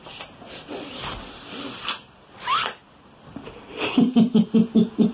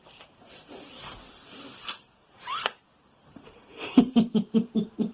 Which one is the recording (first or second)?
first